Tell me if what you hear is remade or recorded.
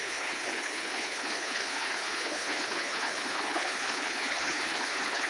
remade